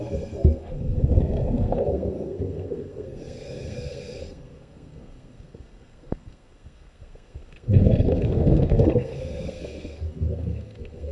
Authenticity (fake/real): fake